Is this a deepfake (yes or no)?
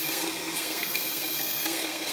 yes